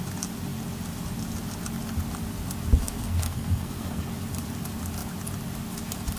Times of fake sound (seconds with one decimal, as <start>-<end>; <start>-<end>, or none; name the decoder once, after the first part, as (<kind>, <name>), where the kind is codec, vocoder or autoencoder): 2.8-4.1 (codec, SNAC)